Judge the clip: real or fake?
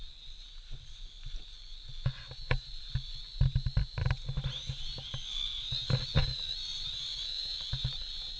real